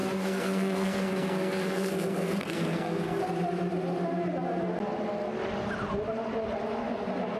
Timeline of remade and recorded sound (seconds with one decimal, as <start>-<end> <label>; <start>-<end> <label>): 0.0-3.2 remade; 3.2-7.4 recorded